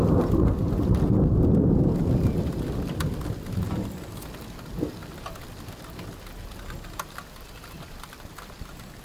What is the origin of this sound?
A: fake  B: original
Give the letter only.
B